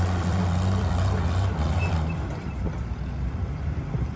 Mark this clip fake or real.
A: fake